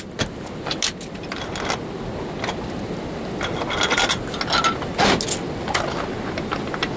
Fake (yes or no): no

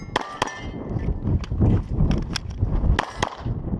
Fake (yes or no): no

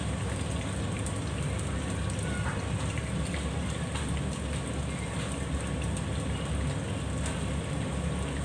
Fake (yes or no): no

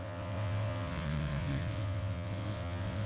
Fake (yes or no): yes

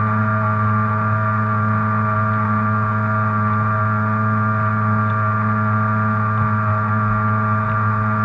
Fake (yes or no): no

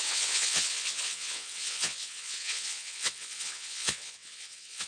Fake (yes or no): yes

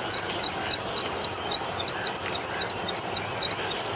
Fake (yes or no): no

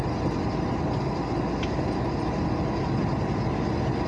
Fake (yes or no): no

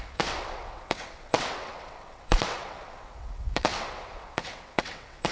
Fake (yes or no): yes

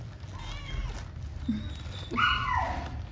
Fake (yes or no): no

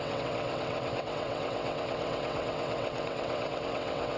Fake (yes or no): yes